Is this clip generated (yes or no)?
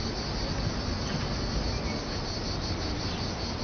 no